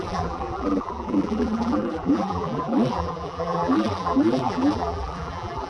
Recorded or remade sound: remade